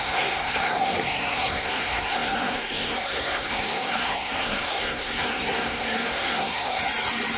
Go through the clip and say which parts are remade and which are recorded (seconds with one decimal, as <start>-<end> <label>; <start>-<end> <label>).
0.0-6.8 remade; 6.8-7.4 recorded